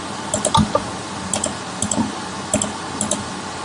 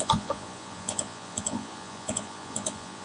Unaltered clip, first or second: first